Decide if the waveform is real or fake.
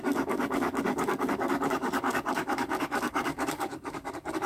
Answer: fake